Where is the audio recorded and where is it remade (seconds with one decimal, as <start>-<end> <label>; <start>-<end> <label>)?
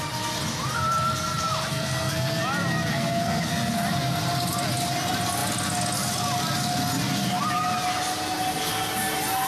0.0-1.7 recorded; 1.7-2.4 remade; 2.4-2.9 recorded; 2.9-3.7 remade; 3.7-9.5 recorded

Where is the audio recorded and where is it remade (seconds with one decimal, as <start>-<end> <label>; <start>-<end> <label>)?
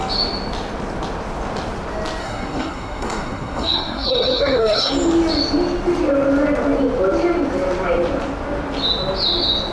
0.0-2.2 recorded; 2.2-4.9 remade; 4.9-9.7 recorded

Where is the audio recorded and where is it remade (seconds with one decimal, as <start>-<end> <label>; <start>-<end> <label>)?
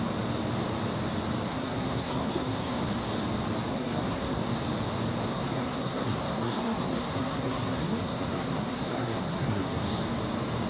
0.0-1.5 recorded; 1.5-2.8 remade; 2.8-3.7 recorded; 3.7-4.4 remade; 4.4-5.3 recorded; 5.3-9.8 remade; 9.8-10.7 recorded